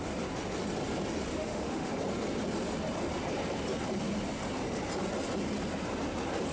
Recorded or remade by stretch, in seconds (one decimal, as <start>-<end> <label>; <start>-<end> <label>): 0.0-1.3 recorded; 1.3-1.9 remade; 1.9-6.5 recorded